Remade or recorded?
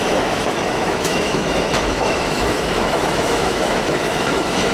remade